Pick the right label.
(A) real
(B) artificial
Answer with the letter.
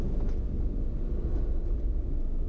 A